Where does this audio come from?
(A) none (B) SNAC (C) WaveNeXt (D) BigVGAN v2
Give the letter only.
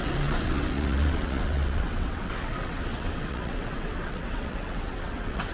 C